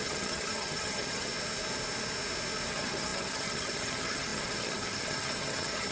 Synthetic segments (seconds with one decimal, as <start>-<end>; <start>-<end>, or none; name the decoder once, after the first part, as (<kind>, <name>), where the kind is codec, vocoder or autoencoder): 0.0-1.3 (vocoder, HiFi-GAN); 2.7-5.9